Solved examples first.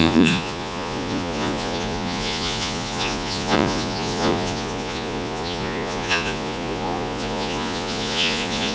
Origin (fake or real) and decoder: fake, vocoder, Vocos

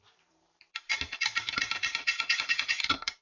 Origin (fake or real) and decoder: fake, vocoder, BigVGAN v2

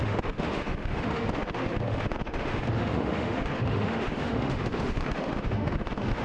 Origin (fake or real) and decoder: fake, autoencoder, DAC-VAE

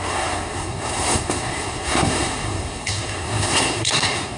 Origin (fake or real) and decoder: fake, codec, SNAC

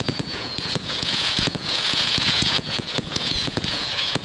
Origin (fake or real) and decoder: fake, vocoder, Vocos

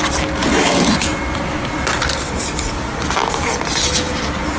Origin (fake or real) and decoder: real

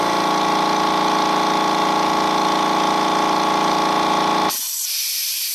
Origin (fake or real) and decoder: real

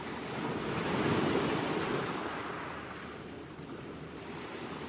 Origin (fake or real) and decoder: real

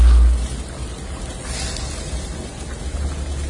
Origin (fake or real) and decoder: real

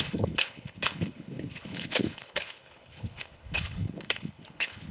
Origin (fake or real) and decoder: fake, codec, HILCodec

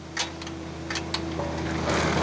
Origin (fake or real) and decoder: real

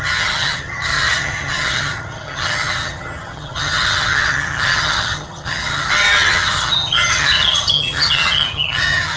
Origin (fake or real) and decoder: fake, vocoder, HiFi-GAN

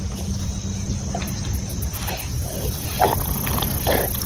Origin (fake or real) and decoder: real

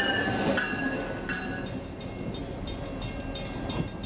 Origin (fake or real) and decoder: real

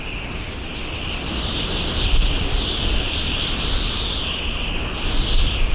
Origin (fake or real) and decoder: real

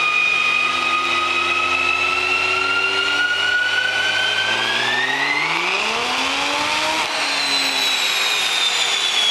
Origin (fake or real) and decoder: real